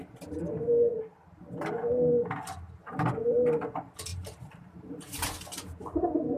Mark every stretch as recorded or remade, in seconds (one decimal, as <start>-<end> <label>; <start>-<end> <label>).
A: 0.0-2.8 recorded; 2.8-3.6 remade; 3.6-4.1 recorded; 4.1-6.0 remade; 6.0-6.4 recorded